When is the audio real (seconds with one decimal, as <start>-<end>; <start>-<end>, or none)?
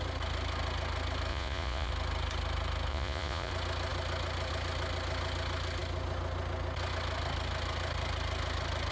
0.0-1.3; 1.9-2.9; 3.5-8.9